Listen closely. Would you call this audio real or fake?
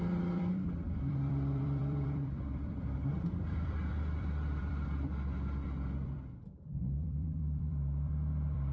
fake